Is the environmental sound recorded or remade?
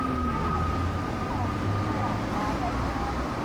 recorded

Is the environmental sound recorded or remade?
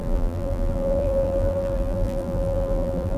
remade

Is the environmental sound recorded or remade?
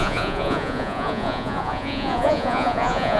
remade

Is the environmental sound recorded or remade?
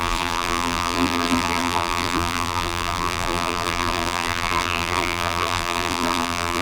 remade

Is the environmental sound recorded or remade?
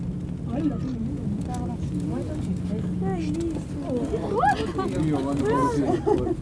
recorded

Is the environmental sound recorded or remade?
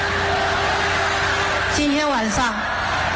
recorded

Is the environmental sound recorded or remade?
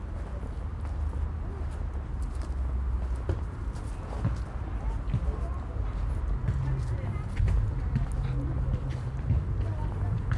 recorded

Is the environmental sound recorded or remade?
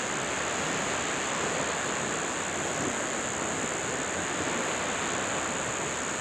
recorded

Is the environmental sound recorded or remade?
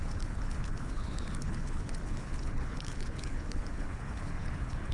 remade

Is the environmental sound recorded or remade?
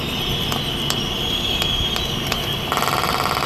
recorded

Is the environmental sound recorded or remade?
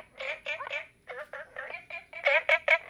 remade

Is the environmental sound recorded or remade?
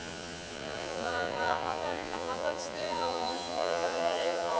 remade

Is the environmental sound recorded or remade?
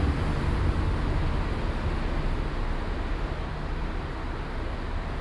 recorded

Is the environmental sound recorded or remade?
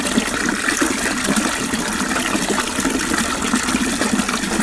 recorded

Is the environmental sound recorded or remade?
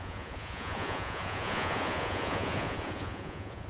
remade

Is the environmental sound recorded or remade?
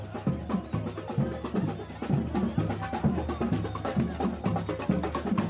recorded